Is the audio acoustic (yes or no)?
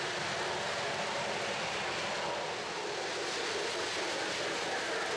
yes